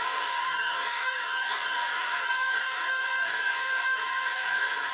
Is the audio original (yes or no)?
no